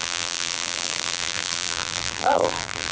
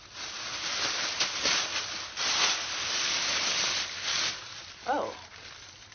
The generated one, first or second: first